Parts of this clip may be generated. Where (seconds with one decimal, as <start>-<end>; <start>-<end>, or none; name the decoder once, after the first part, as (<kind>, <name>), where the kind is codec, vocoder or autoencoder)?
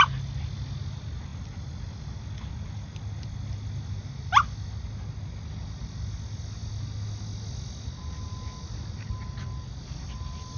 none